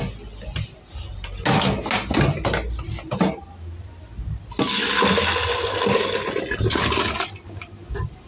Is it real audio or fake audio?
real